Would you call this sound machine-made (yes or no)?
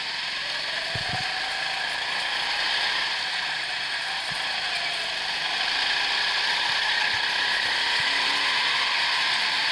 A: no